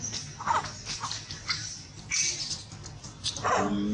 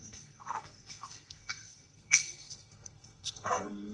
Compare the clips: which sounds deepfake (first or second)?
second